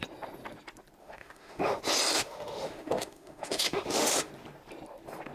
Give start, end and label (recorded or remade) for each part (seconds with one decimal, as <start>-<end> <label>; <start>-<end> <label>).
0.0-1.0 recorded; 1.0-1.8 remade; 1.8-2.2 recorded; 2.2-4.3 remade; 4.3-5.3 recorded

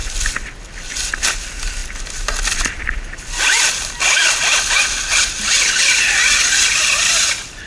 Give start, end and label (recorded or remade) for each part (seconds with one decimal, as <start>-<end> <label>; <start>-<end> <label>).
0.0-7.7 recorded